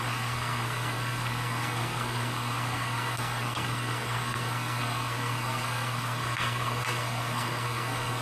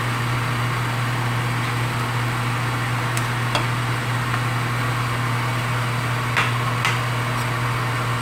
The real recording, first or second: second